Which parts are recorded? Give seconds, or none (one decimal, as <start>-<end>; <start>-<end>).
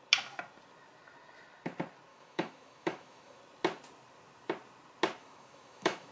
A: 0.0-2.1; 3.4-5.2